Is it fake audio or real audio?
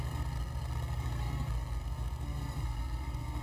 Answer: fake